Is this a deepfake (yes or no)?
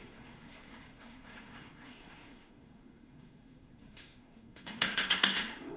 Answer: yes